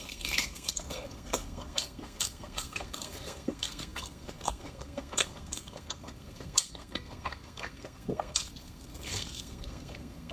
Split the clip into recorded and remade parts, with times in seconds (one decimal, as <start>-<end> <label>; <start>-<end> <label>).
0.0-10.3 remade